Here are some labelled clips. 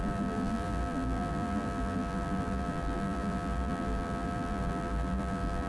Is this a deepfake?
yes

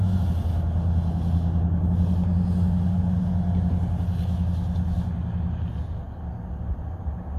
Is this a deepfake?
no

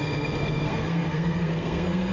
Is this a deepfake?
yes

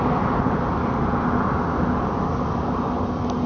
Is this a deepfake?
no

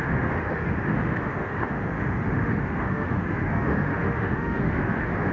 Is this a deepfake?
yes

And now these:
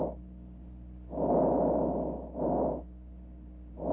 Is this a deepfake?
no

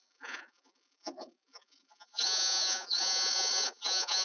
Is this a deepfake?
yes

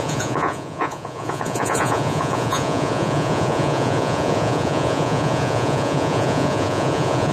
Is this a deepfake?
yes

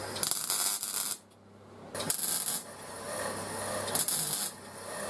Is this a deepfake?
no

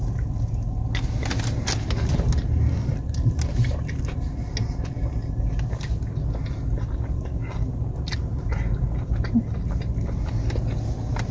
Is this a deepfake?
no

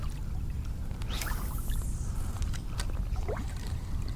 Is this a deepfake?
no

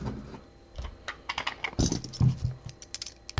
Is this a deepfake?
no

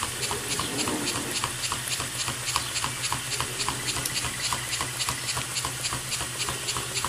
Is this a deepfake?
no